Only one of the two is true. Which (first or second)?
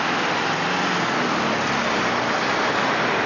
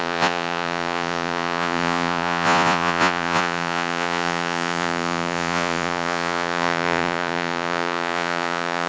first